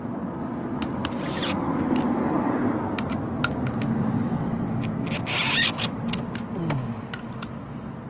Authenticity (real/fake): real